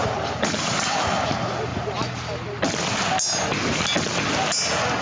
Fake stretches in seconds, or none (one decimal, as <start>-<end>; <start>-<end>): 0.0-0.8